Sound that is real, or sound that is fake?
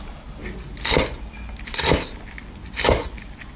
real